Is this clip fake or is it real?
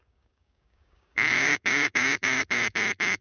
fake